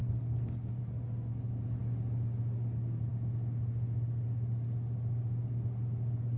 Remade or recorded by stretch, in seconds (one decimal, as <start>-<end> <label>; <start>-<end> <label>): 0.0-0.8 remade; 0.8-6.4 recorded